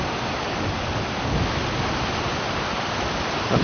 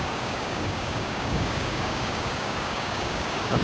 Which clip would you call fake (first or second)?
second